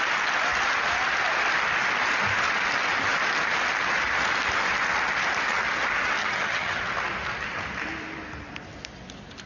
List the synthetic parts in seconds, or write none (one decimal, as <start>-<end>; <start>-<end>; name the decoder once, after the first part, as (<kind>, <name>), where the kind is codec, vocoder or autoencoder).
6.2-6.8 (vocoder, HiFi-GAN)